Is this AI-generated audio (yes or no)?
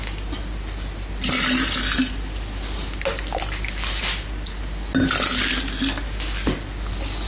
no